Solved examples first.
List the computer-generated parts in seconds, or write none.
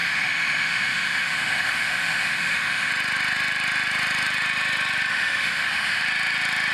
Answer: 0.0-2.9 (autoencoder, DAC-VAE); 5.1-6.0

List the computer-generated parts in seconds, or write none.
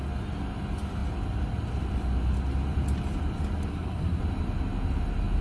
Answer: 3.7-4.2 (codec, SNAC)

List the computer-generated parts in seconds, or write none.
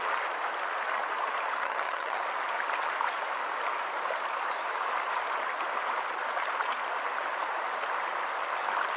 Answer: 1.6-2.2 (vocoder, HiFi-GAN)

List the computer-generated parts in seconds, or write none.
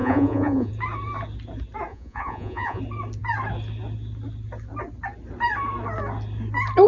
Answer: 0.0-0.7 (vocoder, Vocos); 1.9-2.8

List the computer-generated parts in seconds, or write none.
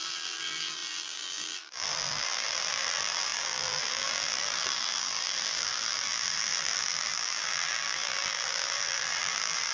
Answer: 0.0-9.7 (vocoder, BigVGAN v2)